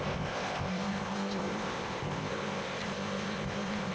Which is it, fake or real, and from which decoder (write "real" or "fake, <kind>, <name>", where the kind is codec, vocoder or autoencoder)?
fake, codec, ZipCodec